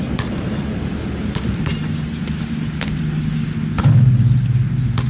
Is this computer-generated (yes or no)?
no